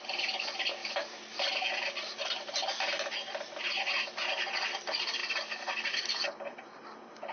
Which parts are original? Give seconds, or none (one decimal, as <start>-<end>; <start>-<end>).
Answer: 0.0-0.8; 1.5-2.2; 3.1-7.3